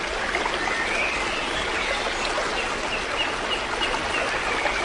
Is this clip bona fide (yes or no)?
yes